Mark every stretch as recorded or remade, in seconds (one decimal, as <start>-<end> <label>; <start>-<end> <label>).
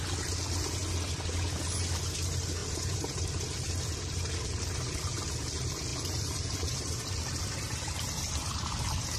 0.0-2.6 recorded; 2.6-3.2 remade; 3.2-5.9 recorded; 5.9-7.1 remade; 7.1-9.2 recorded